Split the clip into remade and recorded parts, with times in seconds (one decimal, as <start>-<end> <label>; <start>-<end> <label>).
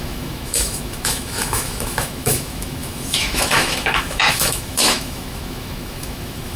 0.0-6.6 remade